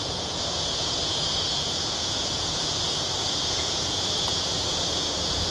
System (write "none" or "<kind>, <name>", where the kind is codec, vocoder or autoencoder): vocoder, Vocos